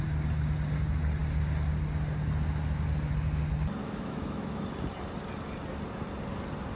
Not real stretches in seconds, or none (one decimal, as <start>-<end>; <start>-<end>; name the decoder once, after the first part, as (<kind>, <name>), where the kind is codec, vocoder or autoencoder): 3.8-4.6 (autoencoder, DAC-VAE)